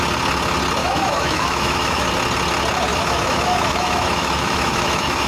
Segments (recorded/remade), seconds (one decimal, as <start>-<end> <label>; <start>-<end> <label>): 0.0-0.8 recorded; 0.8-2.1 remade; 2.1-2.9 recorded; 2.9-5.3 remade